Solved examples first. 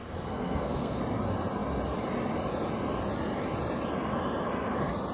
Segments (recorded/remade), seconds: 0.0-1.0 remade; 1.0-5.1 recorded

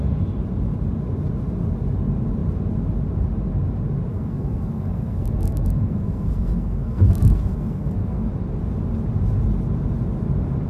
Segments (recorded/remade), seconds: 0.0-4.1 recorded; 4.1-8.3 remade; 8.3-10.7 recorded

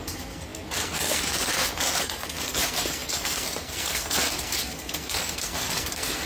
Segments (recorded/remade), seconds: 0.0-6.3 remade

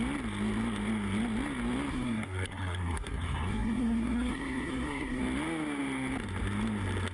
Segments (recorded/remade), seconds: 0.0-1.9 recorded; 1.9-5.2 remade; 5.2-7.1 recorded